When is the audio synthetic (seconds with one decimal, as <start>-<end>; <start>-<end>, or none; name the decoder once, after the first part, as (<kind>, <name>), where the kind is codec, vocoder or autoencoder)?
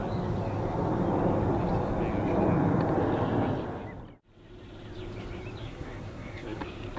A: 5.6-6.6 (codec, SNAC)